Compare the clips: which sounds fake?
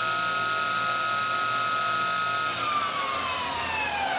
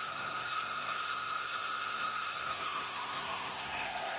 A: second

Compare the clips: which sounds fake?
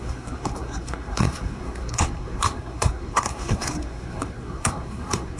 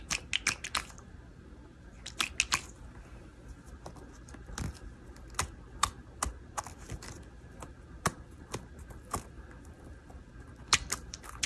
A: first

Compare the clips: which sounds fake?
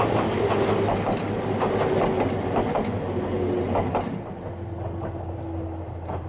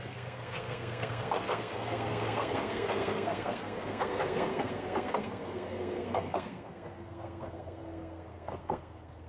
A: second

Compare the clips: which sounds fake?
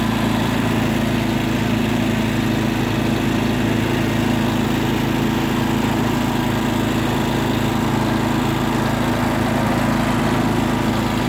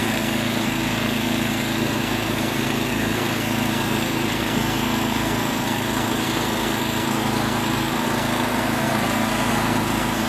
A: second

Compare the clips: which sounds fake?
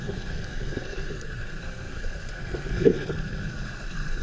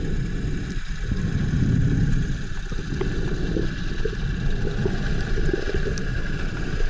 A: first